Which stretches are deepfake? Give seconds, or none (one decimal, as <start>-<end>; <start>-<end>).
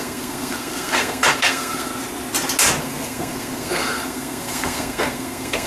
0.0-1.9; 2.8-5.7